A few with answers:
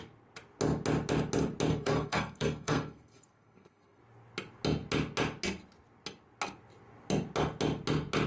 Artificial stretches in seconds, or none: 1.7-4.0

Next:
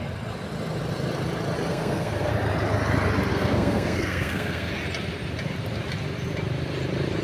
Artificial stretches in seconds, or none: 1.7-2.3; 3.3-4.7

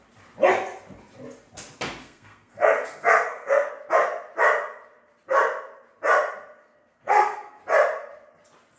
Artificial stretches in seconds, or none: 2.0-3.7; 6.6-7.6

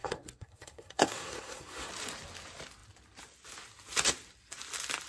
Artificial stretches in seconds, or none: 0.0-1.9